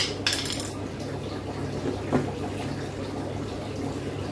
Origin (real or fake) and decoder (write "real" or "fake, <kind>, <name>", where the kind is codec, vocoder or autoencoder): real